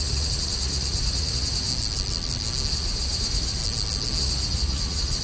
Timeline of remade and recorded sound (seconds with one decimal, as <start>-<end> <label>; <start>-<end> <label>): 0.0-1.7 remade; 1.7-2.7 recorded; 2.7-3.6 remade; 3.6-4.2 recorded; 4.2-5.2 remade